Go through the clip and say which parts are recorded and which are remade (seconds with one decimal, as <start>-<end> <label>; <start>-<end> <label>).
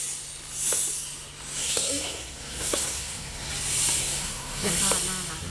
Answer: 0.0-1.6 recorded; 1.6-3.5 remade; 3.5-4.0 recorded; 4.0-4.7 remade; 4.7-5.5 recorded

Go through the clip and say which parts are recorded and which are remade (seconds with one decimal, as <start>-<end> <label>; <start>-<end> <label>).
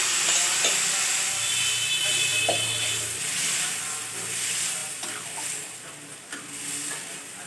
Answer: 0.0-7.5 recorded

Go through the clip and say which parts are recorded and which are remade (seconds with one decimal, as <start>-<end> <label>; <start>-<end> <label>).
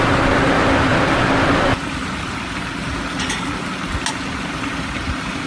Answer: 0.0-5.5 recorded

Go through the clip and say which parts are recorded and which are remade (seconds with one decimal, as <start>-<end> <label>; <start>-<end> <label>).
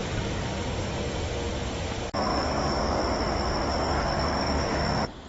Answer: 0.0-0.5 remade; 0.5-2.3 recorded; 2.3-3.0 remade; 3.0-3.7 recorded; 3.7-4.8 remade; 4.8-5.3 recorded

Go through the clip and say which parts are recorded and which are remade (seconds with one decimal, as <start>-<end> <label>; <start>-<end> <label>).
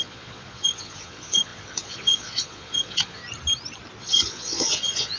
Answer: 0.0-3.2 remade; 3.2-4.0 recorded; 4.0-5.2 remade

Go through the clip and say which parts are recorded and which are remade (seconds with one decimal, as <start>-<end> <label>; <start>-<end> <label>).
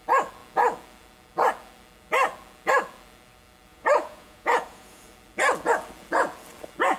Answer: 0.0-3.7 recorded; 3.7-5.0 remade; 5.0-7.0 recorded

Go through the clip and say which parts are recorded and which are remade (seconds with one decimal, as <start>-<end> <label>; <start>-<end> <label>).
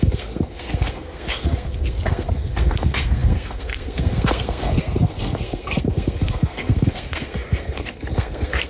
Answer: 0.0-8.7 remade